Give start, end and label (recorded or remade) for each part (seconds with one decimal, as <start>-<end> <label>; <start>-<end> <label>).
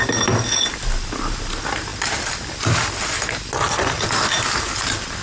0.0-5.2 recorded